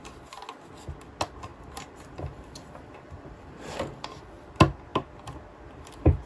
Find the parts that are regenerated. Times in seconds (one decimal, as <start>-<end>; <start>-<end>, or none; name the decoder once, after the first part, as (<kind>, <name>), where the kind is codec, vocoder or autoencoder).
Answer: 1.5-4.1 (vocoder, BigVGAN v2)